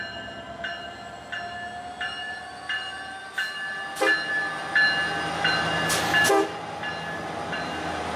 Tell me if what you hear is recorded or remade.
recorded